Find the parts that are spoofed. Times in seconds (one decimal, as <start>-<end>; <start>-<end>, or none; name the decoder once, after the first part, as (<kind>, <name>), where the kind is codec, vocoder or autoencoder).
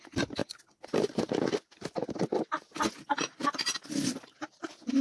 0.4-1.3 (vocoder, BigVGAN v2); 2.0-4.6